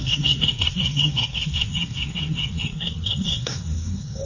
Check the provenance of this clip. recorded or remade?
remade